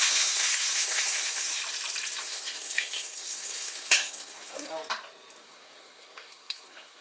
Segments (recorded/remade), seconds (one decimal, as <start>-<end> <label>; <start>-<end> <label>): 0.0-1.6 remade; 1.6-2.2 recorded; 2.2-4.7 remade; 4.7-5.4 recorded; 5.4-7.0 remade